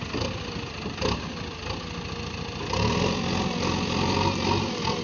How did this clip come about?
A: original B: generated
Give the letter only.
A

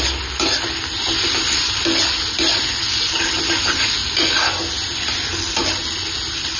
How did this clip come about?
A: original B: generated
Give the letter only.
A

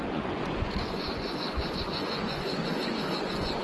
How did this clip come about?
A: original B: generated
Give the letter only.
B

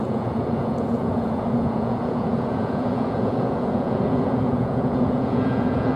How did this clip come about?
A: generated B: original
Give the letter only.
A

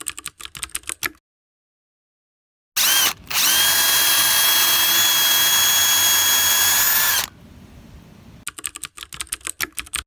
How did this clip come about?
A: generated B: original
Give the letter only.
B